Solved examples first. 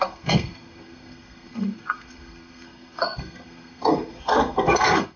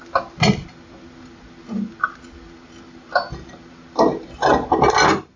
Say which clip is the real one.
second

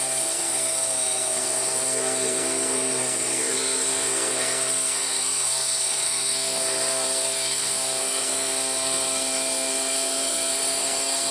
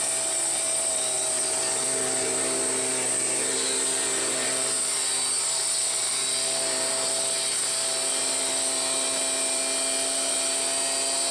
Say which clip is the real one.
second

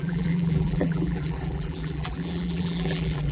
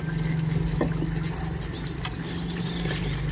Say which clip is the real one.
second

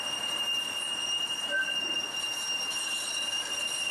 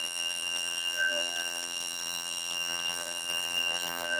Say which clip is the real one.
first